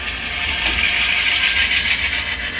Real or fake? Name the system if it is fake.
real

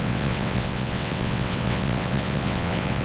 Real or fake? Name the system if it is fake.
fake, vocoder, WaveNeXt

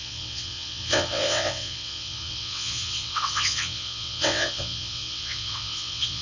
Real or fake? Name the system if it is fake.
fake, vocoder, WaveNeXt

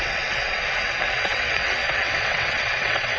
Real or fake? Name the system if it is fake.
fake, vocoder, WaveNeXt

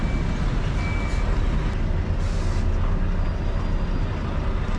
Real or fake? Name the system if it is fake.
real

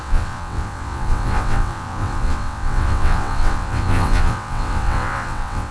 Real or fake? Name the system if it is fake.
fake, vocoder, WaveNeXt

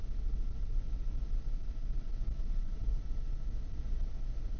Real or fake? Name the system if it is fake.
real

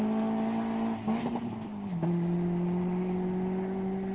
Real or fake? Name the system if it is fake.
real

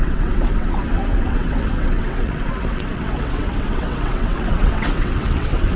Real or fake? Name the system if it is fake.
fake, vocoder, WaveNeXt